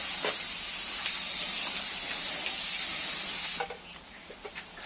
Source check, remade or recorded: recorded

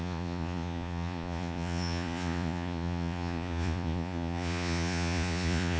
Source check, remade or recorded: remade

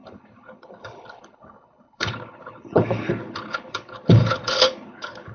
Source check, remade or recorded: remade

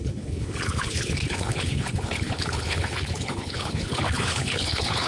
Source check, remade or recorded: remade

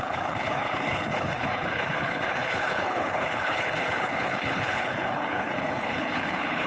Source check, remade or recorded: remade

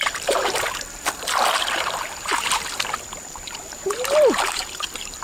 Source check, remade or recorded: remade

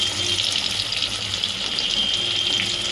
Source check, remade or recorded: recorded